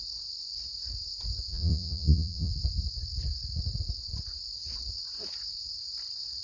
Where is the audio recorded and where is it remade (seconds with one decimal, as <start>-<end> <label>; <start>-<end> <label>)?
0.0-1.5 recorded; 1.5-2.5 remade; 2.5-6.4 recorded